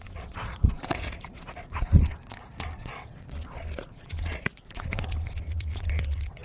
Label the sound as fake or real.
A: fake